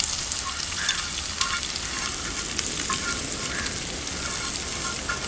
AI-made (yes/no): no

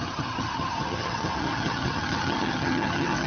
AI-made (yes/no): yes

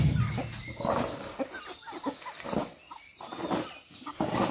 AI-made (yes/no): no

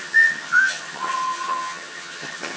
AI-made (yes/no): yes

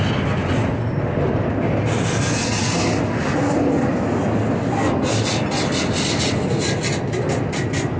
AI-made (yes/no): no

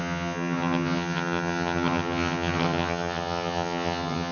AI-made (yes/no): yes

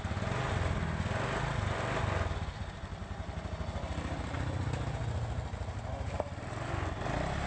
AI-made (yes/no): no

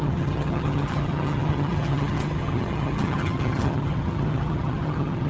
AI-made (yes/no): yes